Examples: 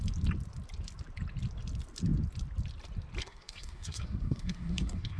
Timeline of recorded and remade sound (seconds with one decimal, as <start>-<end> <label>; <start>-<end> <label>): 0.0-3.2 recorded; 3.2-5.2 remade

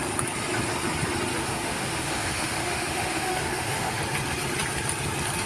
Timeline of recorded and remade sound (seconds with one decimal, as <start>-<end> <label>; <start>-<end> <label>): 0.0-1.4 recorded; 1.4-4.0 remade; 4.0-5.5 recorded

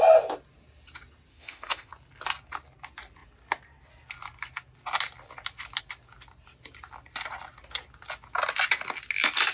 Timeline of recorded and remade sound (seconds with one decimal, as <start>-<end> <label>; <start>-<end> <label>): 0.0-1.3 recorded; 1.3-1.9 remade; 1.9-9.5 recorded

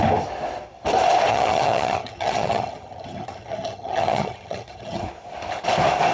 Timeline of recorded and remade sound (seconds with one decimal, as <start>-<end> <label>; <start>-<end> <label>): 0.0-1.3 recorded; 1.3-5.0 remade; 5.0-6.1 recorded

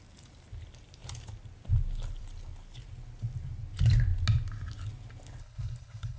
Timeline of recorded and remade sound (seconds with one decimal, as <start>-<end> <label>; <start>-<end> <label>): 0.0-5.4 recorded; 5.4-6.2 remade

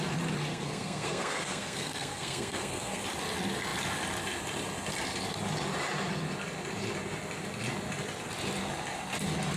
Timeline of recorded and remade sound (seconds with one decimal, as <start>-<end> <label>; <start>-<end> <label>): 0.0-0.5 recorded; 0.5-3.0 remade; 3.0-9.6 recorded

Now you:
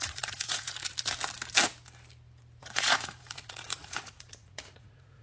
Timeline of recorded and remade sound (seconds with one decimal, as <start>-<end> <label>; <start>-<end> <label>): 0.0-0.9 remade; 0.9-2.6 recorded; 2.6-5.2 remade

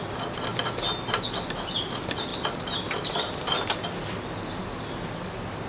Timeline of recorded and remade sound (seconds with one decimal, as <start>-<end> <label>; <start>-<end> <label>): 0.0-5.7 recorded